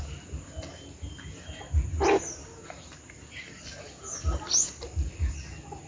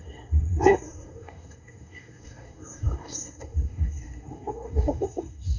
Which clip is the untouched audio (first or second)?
first